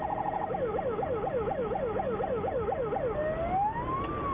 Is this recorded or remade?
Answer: recorded